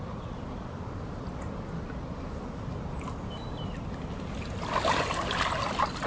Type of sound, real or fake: real